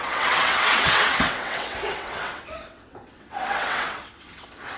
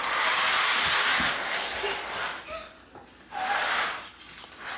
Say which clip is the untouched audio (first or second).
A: second